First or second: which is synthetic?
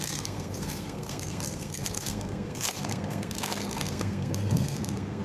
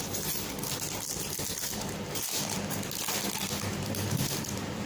first